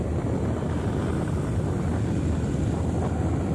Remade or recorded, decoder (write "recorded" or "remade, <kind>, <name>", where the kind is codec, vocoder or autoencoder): recorded